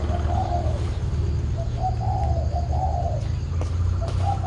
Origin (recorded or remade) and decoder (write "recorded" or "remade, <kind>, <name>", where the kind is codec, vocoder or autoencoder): recorded